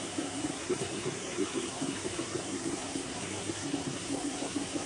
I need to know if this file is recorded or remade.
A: remade